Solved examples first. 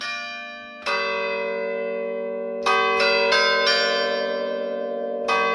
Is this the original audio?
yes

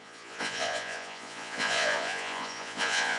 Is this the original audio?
no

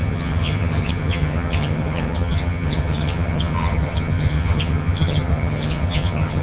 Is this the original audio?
no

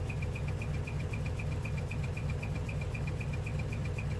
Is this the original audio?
no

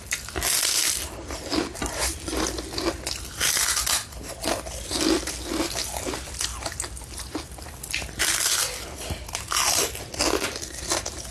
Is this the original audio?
yes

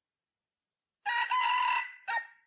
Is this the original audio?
yes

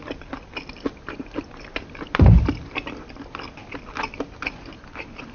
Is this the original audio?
yes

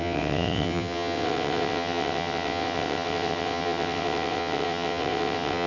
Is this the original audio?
no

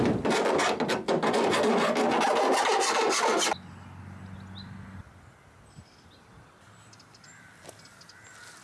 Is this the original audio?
yes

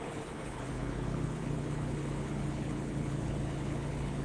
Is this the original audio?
no